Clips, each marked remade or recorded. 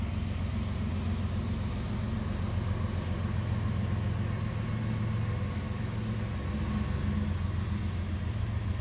recorded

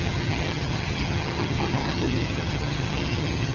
remade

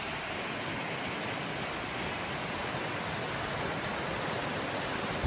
recorded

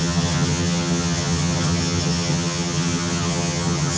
remade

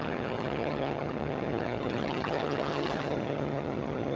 remade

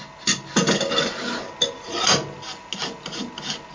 recorded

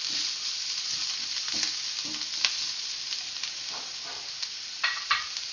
recorded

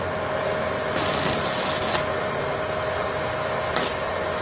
recorded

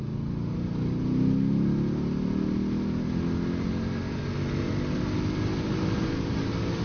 recorded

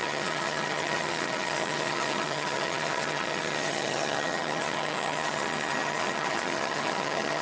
remade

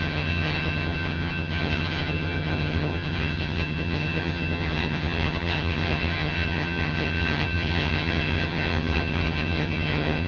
remade